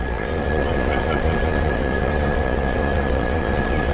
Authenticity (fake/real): fake